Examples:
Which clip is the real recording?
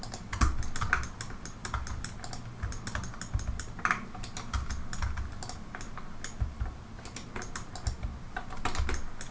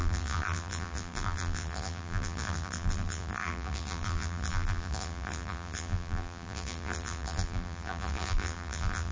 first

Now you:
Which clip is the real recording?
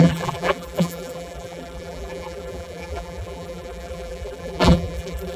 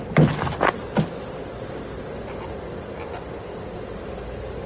second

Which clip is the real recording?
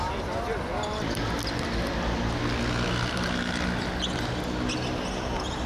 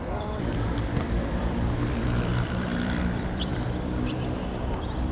first